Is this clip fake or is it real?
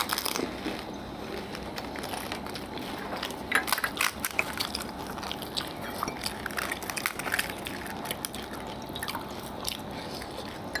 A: real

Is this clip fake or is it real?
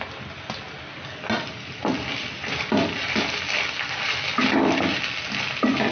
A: real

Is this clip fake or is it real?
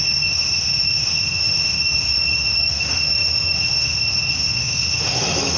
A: fake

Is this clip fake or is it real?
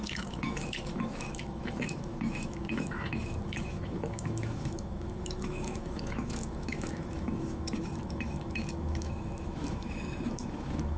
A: fake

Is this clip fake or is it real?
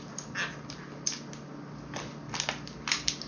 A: real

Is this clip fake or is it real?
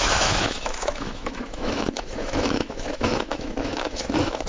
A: fake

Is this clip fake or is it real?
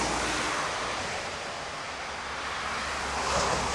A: real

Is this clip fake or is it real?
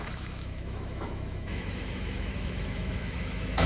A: fake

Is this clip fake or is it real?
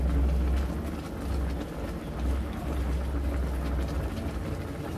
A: real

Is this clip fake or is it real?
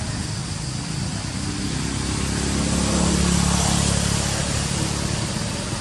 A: real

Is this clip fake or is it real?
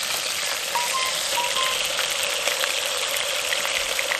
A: real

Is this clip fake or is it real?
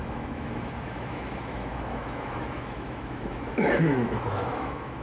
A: fake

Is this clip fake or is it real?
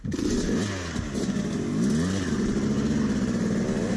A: real